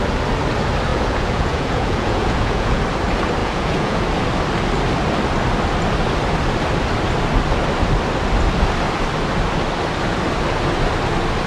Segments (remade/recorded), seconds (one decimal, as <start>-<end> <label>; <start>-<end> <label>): 0.0-0.9 recorded; 0.9-2.8 remade; 2.8-3.4 recorded; 3.4-4.0 remade; 4.0-11.5 recorded